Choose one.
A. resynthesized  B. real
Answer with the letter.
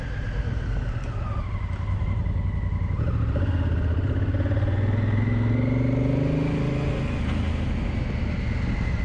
B